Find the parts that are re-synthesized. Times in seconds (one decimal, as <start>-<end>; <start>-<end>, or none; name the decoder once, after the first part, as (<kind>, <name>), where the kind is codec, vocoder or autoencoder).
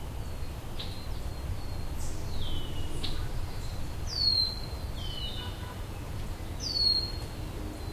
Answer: 5.3-6.4 (vocoder, Vocos)